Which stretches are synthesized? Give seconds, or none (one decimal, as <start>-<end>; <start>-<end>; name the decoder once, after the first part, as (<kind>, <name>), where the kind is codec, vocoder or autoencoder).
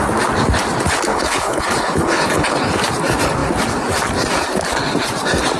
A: 1.1-2.6 (codec, HILCodec)